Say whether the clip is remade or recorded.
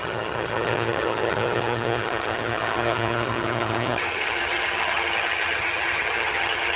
remade